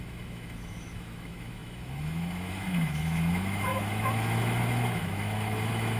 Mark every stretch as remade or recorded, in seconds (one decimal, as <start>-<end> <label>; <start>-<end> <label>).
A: 0.0-6.0 remade